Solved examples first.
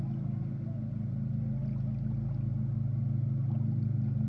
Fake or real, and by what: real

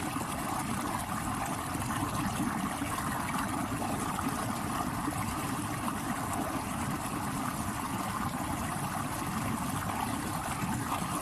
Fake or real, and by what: real